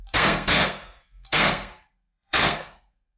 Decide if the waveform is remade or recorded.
remade